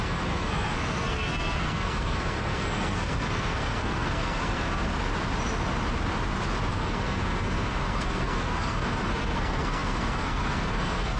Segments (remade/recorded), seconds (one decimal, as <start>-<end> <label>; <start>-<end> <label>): 0.0-4.9 remade; 4.9-6.7 recorded; 6.7-11.2 remade